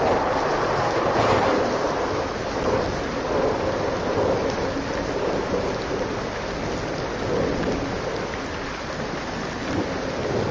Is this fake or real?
real